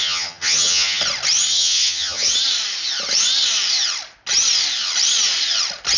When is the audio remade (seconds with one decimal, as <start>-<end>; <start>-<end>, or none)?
0.0-1.0; 1.5-2.3